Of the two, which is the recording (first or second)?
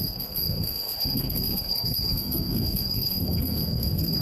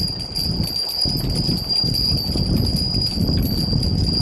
second